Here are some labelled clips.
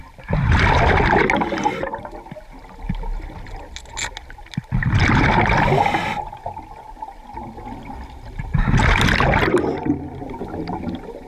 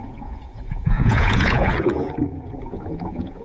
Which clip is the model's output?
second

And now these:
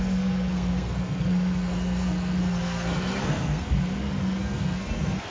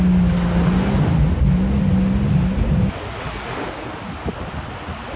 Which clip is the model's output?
first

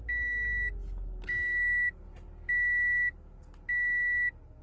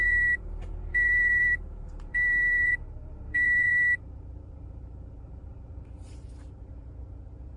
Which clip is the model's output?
second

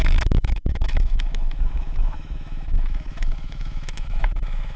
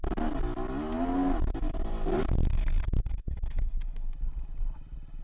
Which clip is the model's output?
first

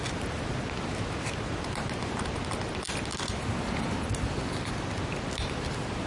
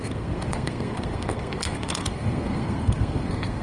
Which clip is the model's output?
second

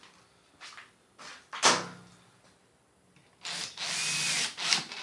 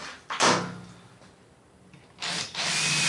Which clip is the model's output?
second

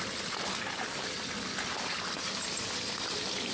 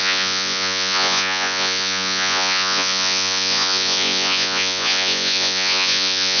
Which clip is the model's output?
second